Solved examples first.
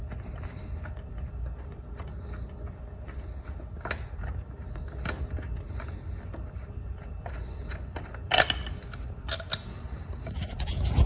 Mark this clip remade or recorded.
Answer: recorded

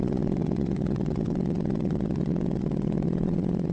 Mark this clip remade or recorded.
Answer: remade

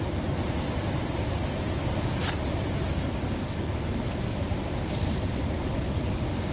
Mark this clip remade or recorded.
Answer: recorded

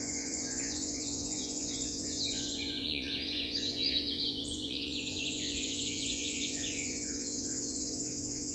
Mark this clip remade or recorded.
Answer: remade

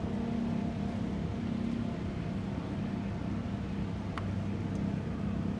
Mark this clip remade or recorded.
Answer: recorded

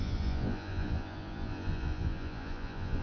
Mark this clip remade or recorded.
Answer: remade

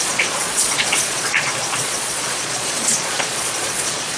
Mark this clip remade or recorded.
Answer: remade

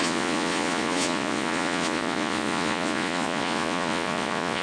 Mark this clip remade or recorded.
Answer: remade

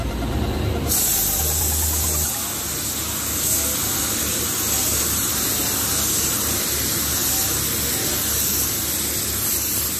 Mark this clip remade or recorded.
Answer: recorded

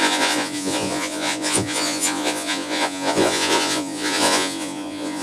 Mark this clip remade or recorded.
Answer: remade